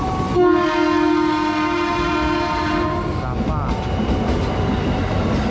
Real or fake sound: real